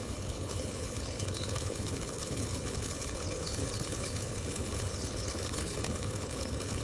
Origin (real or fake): fake